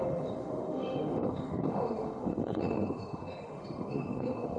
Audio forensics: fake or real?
fake